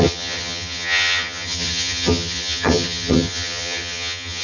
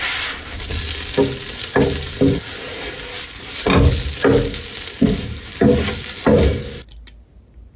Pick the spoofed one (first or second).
first